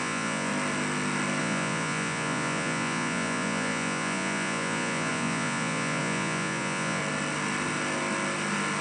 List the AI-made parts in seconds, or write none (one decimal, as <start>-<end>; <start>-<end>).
0.0-0.5; 1.4-7.0